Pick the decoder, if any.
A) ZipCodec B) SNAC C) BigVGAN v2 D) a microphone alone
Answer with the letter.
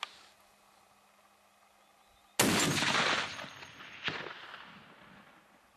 D